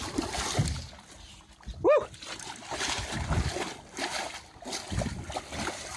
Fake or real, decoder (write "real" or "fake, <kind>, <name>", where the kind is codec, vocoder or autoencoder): real